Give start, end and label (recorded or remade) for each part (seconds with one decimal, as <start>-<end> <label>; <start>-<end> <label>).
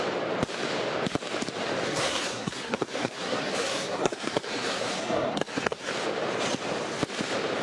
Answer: 0.0-1.9 recorded; 1.9-5.9 remade; 5.9-7.6 recorded